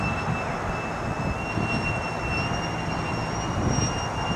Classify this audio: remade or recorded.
recorded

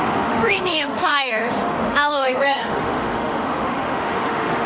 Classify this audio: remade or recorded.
remade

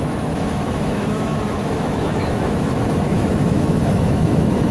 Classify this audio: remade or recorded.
remade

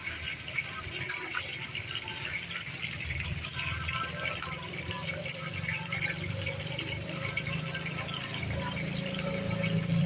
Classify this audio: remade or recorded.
remade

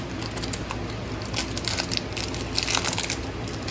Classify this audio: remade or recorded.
recorded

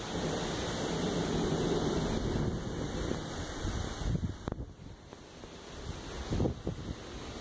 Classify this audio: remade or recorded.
recorded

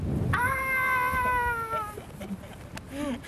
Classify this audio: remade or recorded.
recorded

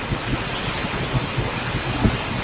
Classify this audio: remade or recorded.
recorded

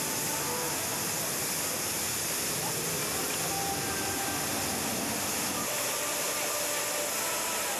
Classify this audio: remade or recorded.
recorded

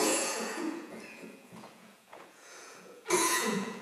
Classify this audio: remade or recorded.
remade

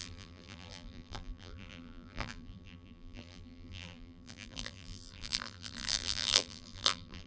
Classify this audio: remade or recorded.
remade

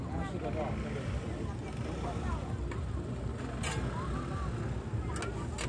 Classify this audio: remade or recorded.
recorded